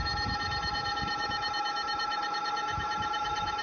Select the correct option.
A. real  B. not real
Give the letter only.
B